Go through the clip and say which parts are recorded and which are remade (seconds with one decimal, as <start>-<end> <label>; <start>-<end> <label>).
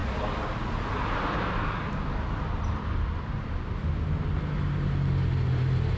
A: 0.0-6.0 recorded